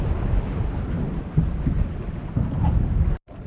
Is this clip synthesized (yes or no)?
no